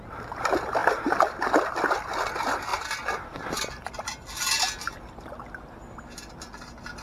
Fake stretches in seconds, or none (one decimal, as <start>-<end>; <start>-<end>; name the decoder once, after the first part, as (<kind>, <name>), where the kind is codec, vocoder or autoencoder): none